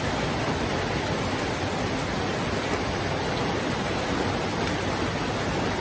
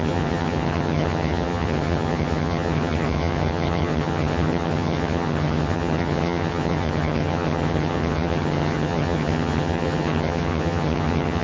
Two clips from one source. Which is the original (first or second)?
first